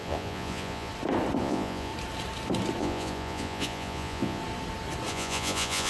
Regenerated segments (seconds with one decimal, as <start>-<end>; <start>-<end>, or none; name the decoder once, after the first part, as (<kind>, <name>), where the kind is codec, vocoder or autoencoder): 0.0-0.9 (vocoder, Vocos); 1.4-1.9; 2.8-4.4; 5.1-5.9